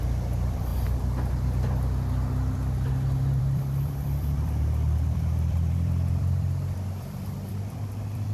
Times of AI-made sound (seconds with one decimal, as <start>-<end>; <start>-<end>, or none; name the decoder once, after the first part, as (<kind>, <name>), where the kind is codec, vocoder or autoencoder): 0.0-0.7 (vocoder, BigVGAN v2); 3.4-8.3